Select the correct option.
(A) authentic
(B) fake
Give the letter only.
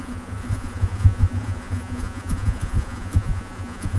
B